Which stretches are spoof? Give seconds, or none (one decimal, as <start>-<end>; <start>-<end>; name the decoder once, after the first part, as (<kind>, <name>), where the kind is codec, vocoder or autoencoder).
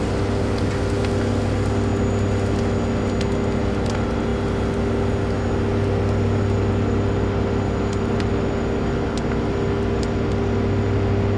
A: none